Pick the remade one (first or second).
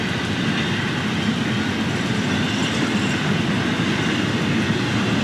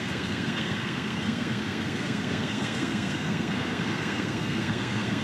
second